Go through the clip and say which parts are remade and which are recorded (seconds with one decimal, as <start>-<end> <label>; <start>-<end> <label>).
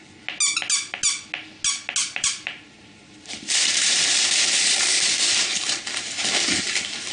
0.0-2.0 recorded; 2.0-6.1 remade; 6.1-7.1 recorded